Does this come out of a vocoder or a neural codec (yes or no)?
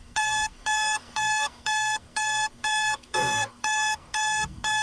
yes